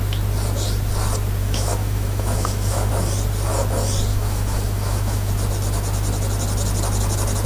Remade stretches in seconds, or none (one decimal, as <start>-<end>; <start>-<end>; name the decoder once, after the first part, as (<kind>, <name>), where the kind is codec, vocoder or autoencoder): 1.4-2.9 (autoencoder, DAC-VAE); 4.1-5.3